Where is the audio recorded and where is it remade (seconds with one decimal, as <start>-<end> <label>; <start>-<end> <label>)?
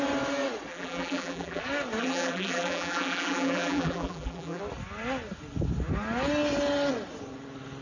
0.0-0.7 recorded; 0.7-1.6 remade; 1.6-2.0 recorded; 2.0-4.6 remade; 4.6-7.8 recorded